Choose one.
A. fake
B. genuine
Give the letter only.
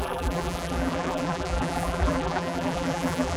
A